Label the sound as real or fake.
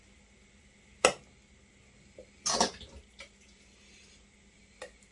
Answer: real